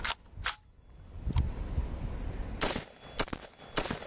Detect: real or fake real